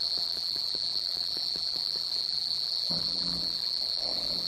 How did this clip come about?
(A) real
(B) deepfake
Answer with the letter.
B